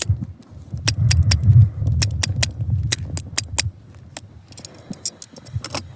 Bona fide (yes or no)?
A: yes